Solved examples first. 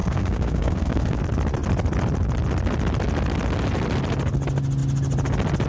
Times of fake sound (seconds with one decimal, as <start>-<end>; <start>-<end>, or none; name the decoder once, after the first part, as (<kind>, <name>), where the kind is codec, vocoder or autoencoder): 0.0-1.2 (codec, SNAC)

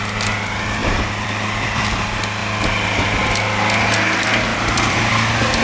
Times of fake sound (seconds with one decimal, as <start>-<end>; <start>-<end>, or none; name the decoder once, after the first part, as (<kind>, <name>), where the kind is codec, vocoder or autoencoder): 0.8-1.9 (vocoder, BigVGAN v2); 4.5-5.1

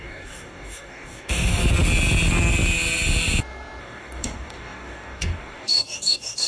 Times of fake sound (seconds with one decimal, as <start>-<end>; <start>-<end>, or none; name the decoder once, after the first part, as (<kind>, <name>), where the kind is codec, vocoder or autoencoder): 0.0-1.6 (codec, DAC); 3.8-6.5

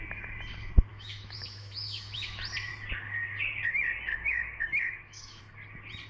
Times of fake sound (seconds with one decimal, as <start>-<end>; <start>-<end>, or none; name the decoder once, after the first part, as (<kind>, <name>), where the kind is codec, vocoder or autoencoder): 0.9-2.4 (autoencoder, DAC-VAE); 4.1-5.4